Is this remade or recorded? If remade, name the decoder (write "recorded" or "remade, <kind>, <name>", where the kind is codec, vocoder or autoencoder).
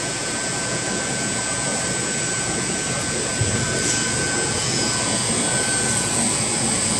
remade, vocoder, Vocos